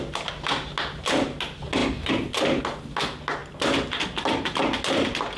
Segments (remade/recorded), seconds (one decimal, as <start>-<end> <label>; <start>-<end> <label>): 0.0-5.4 recorded